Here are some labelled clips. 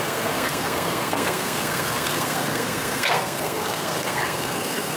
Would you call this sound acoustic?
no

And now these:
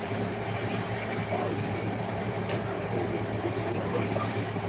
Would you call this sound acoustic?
no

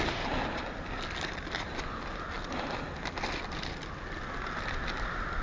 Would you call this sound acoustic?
yes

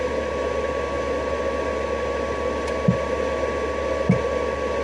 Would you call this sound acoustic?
yes